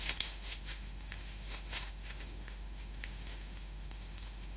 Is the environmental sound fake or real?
fake